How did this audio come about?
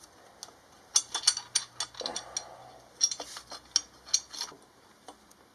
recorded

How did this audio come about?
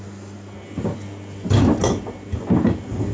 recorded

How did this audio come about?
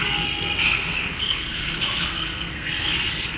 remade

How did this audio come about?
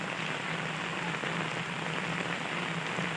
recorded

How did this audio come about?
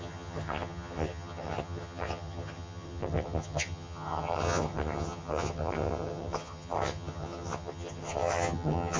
remade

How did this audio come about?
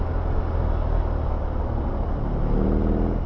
recorded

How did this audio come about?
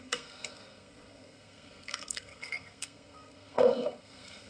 remade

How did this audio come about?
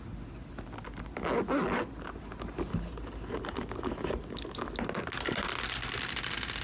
recorded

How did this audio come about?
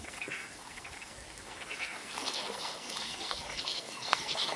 remade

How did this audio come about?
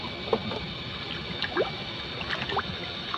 recorded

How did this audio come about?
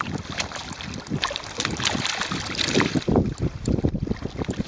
remade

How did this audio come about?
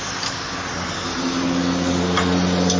recorded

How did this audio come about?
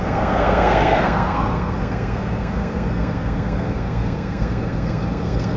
remade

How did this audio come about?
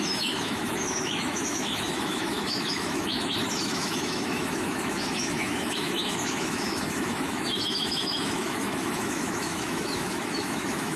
remade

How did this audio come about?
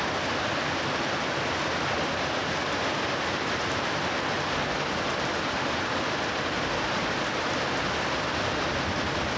recorded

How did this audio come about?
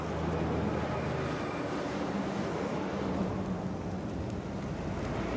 recorded